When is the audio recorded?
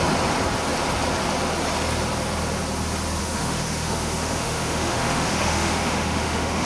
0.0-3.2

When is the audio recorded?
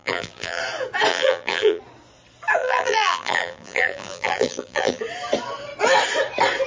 0.6-1.1; 1.8-2.6; 5.0-6.7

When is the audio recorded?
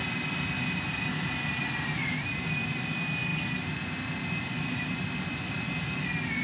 0.0-6.4